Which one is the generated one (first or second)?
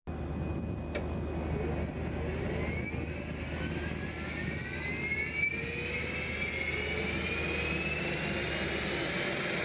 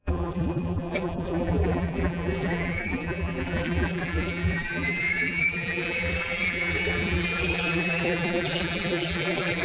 second